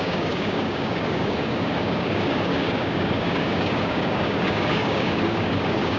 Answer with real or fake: fake